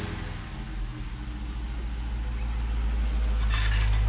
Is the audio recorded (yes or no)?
yes